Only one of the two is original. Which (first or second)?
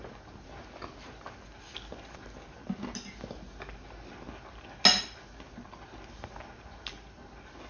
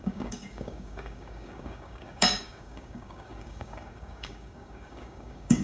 first